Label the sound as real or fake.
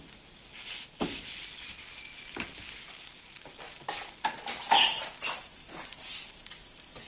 real